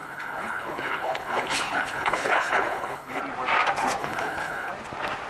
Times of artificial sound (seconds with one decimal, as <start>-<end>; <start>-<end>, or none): 0.0-3.2; 4.0-4.7